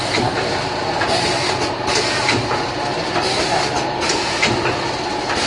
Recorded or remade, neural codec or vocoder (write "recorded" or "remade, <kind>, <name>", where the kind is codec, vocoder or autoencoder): recorded